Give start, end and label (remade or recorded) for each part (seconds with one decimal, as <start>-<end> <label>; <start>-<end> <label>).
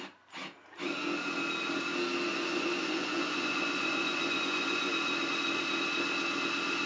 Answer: 0.0-2.3 recorded; 2.3-4.9 remade; 4.9-6.9 recorded